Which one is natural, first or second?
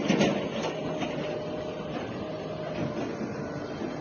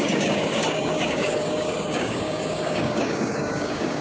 first